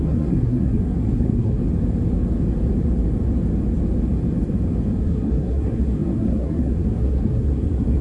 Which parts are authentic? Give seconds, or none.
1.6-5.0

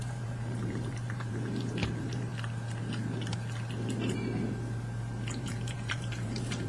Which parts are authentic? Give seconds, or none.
2.3-5.4

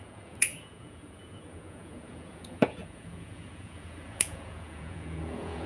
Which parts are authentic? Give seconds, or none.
none

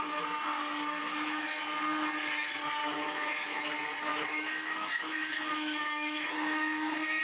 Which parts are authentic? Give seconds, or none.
0.0-1.0; 1.6-2.8; 3.6-4.1

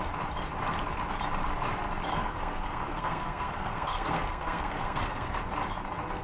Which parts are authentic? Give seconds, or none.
0.0-2.1; 5.4-6.2

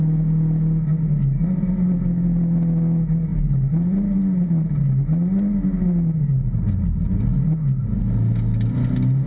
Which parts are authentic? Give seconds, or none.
0.0-9.3

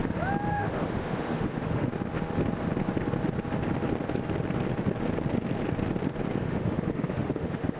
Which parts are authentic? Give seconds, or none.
0.0-0.5; 1.9-6.4

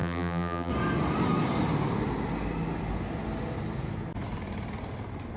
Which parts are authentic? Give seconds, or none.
0.7-5.4